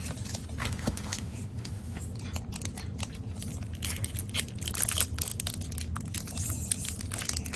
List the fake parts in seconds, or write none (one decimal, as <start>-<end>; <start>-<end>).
0.6-2.0